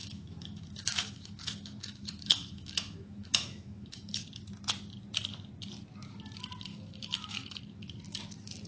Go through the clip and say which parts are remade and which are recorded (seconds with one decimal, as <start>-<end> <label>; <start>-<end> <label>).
0.0-4.2 remade; 4.2-6.7 recorded; 6.7-7.6 remade; 7.6-8.7 recorded